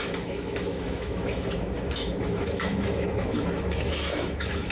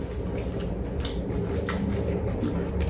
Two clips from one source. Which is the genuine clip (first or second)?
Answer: second